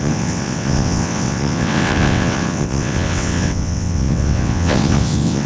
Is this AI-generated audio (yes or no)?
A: yes